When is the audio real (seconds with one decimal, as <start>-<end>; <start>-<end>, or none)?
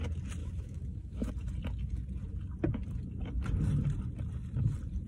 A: 0.0-0.4; 1.3-5.1